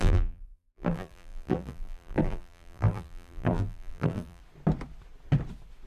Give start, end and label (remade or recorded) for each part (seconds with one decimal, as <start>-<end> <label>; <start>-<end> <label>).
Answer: 0.0-4.4 remade; 4.4-5.9 recorded